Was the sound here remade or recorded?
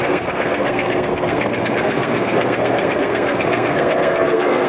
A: remade